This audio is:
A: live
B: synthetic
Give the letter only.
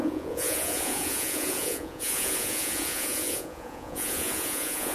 B